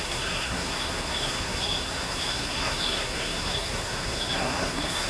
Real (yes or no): no